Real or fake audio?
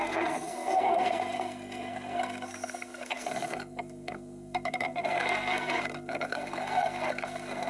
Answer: fake